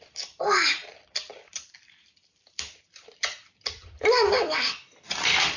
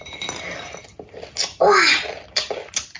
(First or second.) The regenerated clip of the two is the first